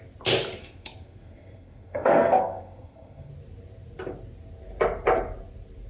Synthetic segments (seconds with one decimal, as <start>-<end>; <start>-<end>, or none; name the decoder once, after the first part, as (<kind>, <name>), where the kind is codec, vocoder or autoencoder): 0.6-3.3 (codec, SNAC)